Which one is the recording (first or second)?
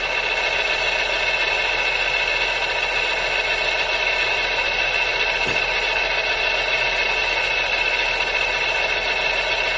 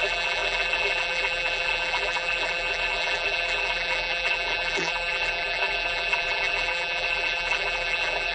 first